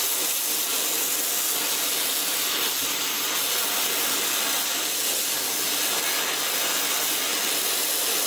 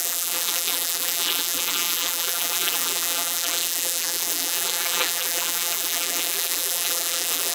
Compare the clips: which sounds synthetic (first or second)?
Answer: second